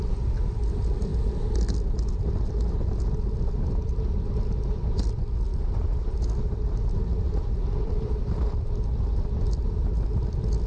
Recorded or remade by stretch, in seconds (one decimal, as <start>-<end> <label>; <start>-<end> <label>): 0.0-10.7 recorded